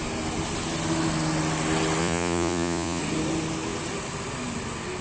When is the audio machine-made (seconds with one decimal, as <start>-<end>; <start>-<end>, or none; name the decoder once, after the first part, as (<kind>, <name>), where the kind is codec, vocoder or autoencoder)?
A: 2.0-3.0 (vocoder, Vocos)